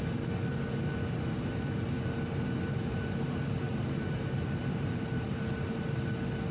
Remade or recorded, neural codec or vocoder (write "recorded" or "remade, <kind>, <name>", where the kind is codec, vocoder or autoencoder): recorded